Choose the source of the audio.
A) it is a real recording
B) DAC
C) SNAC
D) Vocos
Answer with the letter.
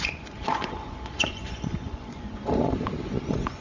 D